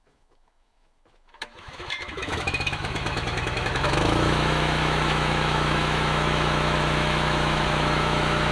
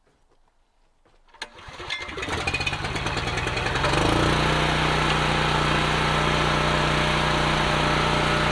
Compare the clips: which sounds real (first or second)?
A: second